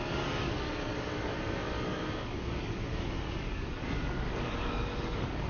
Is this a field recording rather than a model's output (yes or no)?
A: no